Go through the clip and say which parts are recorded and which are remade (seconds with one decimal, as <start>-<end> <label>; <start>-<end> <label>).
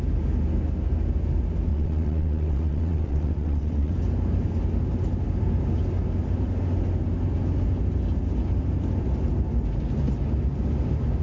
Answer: 0.0-1.7 recorded; 1.7-3.9 remade; 3.9-11.2 recorded